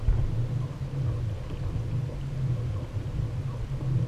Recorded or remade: recorded